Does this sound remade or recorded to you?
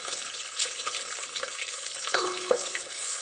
remade